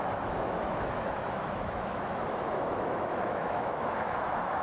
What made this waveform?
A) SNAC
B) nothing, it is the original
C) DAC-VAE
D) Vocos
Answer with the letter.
C